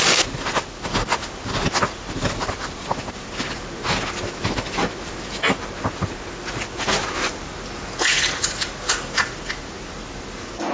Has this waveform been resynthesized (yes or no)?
no